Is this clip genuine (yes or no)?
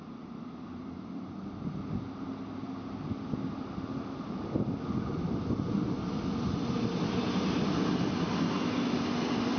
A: yes